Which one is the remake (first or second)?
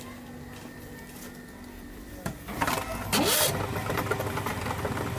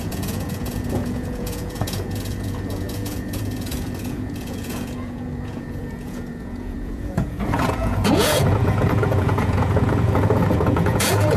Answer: second